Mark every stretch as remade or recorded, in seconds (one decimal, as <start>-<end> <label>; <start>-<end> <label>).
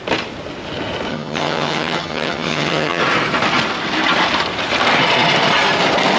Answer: 0.0-1.1 recorded; 1.1-3.0 remade; 3.0-6.2 recorded